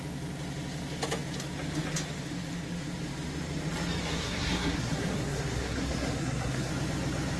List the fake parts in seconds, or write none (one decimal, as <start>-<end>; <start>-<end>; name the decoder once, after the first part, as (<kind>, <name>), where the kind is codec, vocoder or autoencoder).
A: 4.0-6.7 (codec, SNAC)